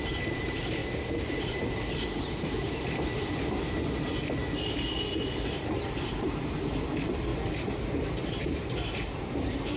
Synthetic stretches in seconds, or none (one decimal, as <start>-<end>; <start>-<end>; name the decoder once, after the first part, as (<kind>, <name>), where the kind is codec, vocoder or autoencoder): 0.0-0.8 (vocoder, BigVGAN v2); 5.9-7.3; 8.4-9.8